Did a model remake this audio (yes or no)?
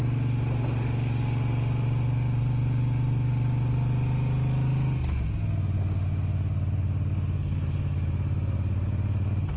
no